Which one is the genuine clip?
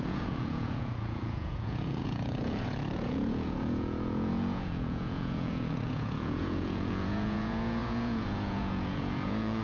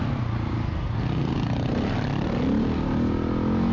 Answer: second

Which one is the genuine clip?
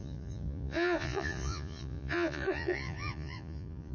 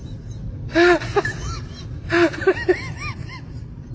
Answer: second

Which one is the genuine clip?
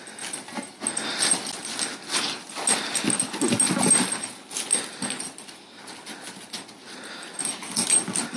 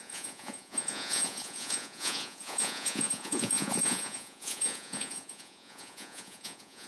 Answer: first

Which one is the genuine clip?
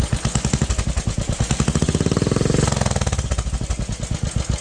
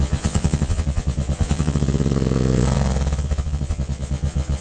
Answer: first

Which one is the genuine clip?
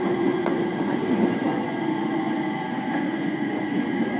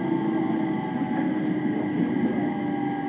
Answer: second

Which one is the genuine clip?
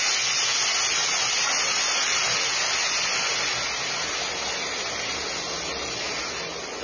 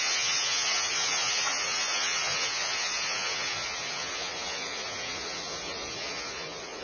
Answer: first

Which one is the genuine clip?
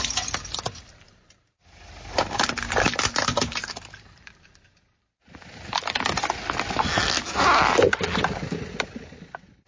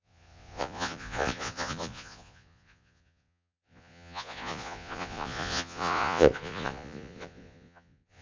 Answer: first